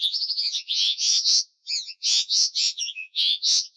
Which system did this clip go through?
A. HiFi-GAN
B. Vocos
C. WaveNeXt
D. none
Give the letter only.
B